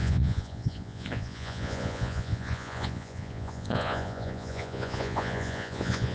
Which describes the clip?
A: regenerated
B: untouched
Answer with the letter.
A